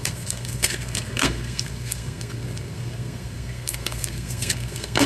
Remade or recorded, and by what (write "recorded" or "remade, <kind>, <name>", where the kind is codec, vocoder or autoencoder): remade, codec, SNAC